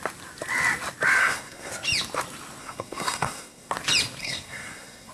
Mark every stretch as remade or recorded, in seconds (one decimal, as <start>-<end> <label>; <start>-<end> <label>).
0.0-1.2 recorded; 1.2-1.7 remade; 1.7-2.6 recorded; 2.6-3.7 remade; 3.7-4.2 recorded; 4.2-5.1 remade